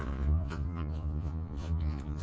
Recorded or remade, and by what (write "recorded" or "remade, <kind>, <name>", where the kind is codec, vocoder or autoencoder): remade, vocoder, Vocos